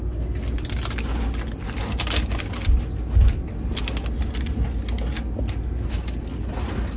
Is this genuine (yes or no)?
yes